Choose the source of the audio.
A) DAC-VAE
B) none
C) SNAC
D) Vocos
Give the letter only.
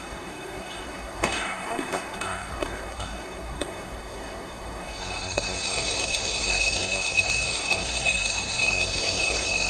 C